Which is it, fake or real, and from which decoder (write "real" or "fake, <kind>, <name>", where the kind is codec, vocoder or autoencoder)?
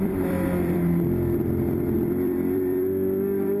fake, vocoder, BigVGAN v2